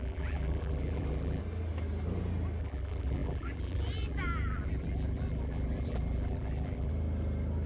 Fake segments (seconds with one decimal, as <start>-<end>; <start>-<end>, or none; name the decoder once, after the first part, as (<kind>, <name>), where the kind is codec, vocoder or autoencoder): 0.0-1.4 (vocoder, BigVGAN v2); 2.6-6.9